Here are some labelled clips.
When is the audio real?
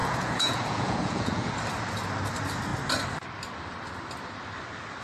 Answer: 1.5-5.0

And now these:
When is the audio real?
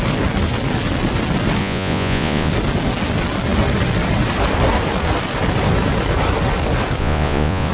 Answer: 0.0-1.6; 2.5-7.0